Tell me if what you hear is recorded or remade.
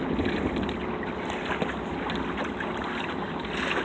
recorded